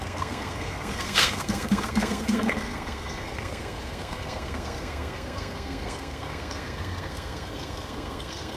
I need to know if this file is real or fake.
fake